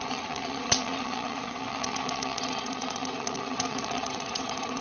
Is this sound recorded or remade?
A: remade